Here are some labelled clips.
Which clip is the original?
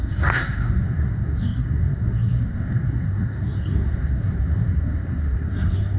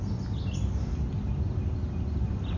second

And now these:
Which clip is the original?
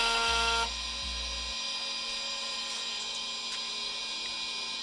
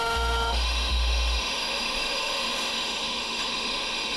first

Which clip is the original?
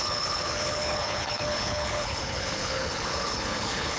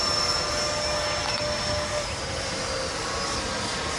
second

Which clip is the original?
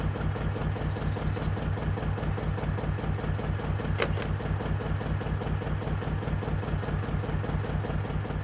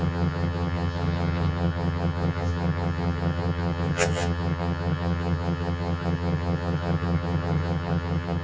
first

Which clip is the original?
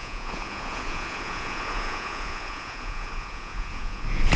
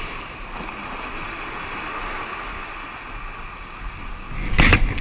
second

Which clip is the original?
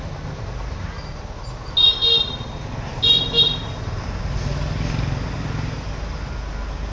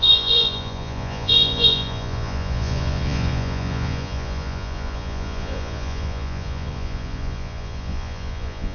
first